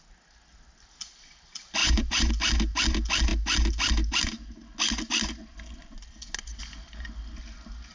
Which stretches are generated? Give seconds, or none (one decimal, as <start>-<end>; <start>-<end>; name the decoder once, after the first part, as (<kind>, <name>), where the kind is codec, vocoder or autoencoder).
1.8-2.3 (vocoder, Vocos)